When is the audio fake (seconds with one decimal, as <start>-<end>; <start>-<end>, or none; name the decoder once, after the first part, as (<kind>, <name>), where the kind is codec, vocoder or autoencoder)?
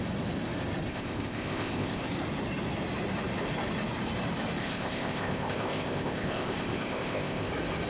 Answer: 0.9-2.0 (codec, ZipCodec); 4.6-7.5